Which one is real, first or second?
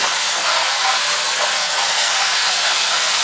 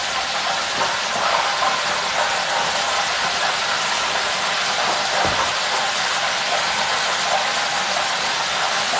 second